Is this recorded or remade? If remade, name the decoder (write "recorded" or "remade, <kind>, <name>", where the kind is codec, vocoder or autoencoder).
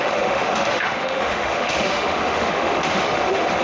remade, autoencoder, DAC-VAE